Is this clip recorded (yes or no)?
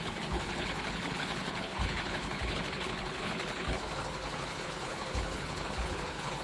no